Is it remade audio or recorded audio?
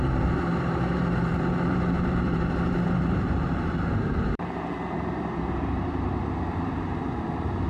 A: remade